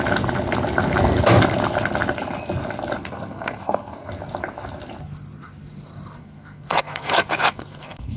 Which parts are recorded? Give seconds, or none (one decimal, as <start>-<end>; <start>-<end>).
0.0-3.0; 4.1-6.2